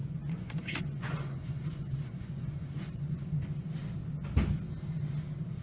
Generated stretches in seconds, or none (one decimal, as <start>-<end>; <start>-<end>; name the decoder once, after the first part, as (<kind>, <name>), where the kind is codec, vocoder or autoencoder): 0.0-3.4 (vocoder, Vocos)